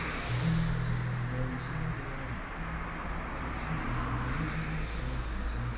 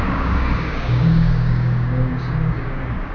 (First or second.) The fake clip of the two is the second